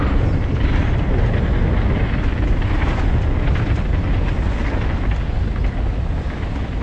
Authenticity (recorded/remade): recorded